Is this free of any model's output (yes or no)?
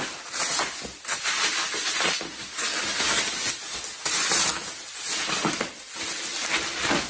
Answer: yes